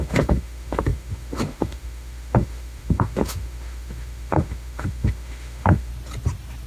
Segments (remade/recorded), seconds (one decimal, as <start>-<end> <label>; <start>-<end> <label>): 0.0-5.9 remade; 5.9-6.7 recorded